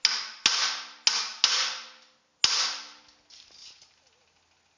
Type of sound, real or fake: real